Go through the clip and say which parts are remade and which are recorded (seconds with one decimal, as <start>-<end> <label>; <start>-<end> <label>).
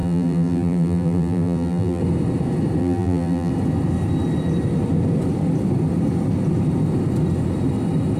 0.0-2.0 remade; 2.0-2.8 recorded; 2.8-3.5 remade; 3.5-8.2 recorded